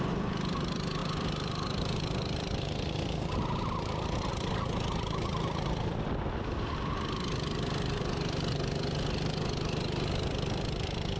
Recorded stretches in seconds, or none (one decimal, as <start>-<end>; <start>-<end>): 0.0-1.0; 4.3-11.2